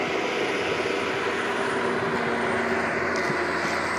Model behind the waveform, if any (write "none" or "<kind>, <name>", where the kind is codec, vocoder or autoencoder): none